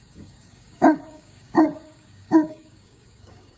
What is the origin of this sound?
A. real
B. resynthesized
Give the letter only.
B